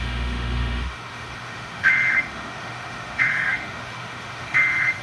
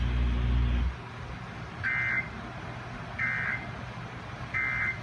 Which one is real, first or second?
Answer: second